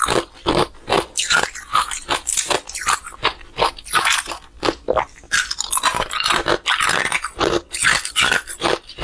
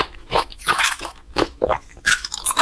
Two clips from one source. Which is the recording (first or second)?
first